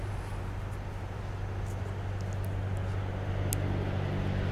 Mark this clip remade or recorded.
recorded